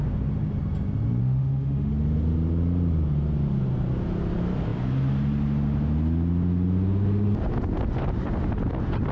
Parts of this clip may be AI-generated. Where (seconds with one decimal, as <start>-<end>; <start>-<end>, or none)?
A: 1.2-1.9